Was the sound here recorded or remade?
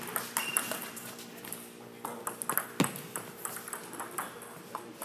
recorded